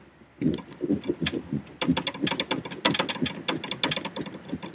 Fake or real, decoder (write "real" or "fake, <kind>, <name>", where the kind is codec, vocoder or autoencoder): real